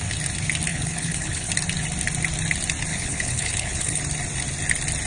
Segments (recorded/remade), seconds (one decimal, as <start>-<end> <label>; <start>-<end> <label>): 0.0-0.7 recorded; 0.7-1.5 remade; 1.5-2.9 recorded; 2.9-4.0 remade; 4.0-5.1 recorded